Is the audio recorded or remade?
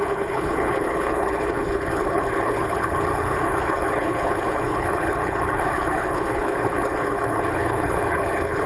remade